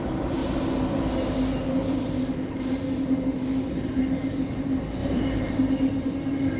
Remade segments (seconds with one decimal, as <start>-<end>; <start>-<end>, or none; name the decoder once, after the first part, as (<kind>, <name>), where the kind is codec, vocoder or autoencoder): 5.0-5.6 (vocoder, BigVGAN v2)